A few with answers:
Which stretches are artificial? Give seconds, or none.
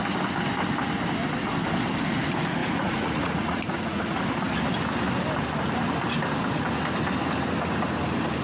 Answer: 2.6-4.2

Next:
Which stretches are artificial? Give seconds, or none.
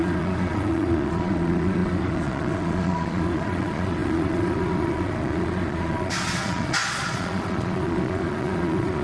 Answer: 0.0-9.0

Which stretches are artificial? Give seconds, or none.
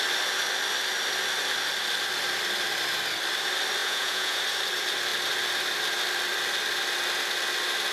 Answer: 3.8-4.4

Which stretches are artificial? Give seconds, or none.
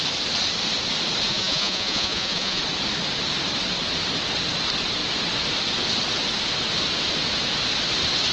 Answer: 1.3-2.6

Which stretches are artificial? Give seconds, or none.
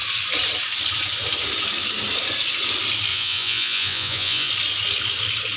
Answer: 3.1-4.5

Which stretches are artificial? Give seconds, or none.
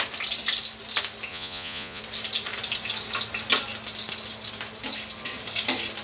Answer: 1.3-2.0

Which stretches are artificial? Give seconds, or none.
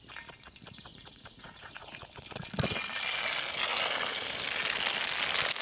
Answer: 0.9-2.1